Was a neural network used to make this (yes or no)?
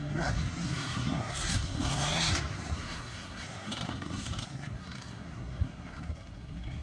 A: yes